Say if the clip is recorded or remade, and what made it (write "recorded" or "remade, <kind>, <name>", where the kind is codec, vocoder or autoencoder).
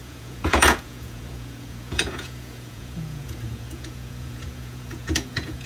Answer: remade, vocoder, Vocos